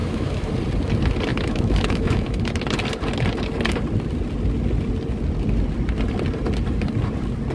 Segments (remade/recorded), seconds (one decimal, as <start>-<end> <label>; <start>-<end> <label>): 0.0-0.5 remade; 0.5-1.3 recorded; 1.3-2.5 remade; 2.5-7.5 recorded